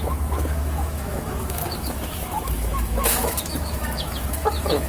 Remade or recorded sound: remade